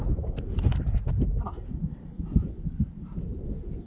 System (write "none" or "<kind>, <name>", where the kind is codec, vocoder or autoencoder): none